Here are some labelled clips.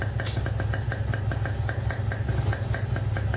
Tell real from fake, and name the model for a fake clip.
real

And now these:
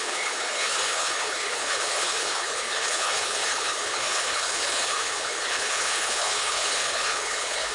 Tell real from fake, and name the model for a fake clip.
fake, codec, HILCodec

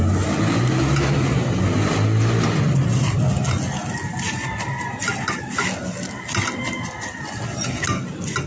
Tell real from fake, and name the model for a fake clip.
real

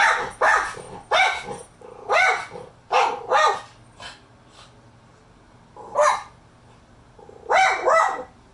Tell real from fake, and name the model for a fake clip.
real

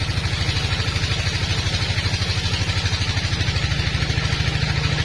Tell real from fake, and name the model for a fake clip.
real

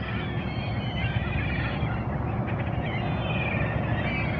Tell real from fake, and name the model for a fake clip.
real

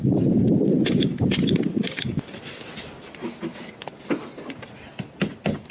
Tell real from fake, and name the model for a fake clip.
real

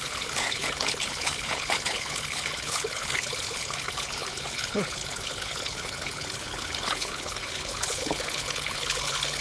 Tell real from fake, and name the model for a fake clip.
fake, codec, HILCodec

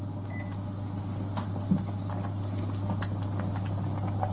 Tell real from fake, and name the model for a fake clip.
real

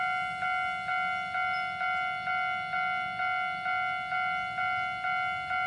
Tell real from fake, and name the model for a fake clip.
real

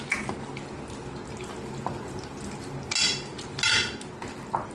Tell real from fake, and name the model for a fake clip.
real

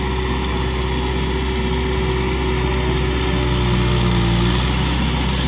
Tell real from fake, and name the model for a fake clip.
real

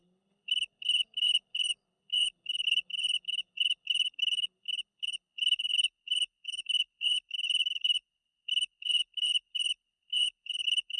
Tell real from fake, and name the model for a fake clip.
fake, codec, HILCodec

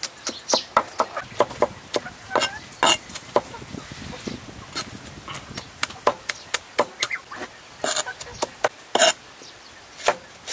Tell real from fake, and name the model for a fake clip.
real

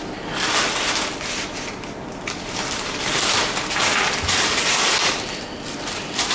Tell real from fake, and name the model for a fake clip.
real